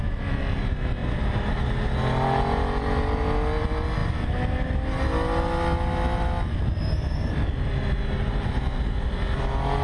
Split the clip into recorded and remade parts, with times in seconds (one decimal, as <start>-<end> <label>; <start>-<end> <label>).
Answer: 0.0-1.0 recorded; 1.0-1.5 remade; 1.5-9.8 recorded